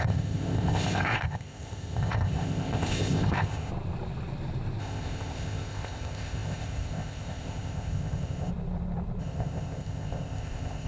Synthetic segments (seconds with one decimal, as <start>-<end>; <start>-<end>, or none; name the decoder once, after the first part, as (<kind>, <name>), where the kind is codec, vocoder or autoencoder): 0.0-3.7 (codec, ZipCodec); 4.8-8.5; 9.2-10.9